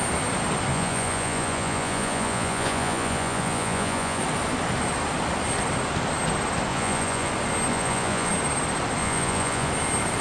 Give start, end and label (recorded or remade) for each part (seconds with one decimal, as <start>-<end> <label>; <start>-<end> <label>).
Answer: 0.0-0.7 recorded; 0.7-4.2 remade; 4.2-6.7 recorded; 6.7-7.3 remade; 7.3-7.7 recorded; 7.7-8.3 remade; 8.3-9.0 recorded; 9.0-9.7 remade; 9.7-10.2 recorded